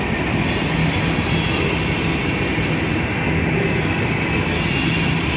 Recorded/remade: recorded